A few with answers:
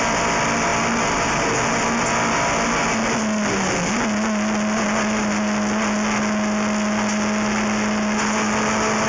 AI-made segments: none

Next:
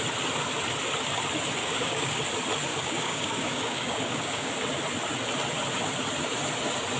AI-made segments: 1.6-2.2 (codec, DAC); 2.7-4.5

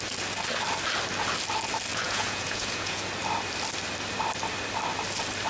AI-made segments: 1.9-3.0 (vocoder, Vocos)